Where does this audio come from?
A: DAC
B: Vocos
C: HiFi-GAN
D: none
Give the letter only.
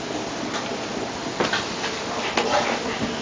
D